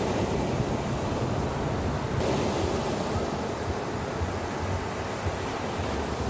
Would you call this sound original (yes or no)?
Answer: yes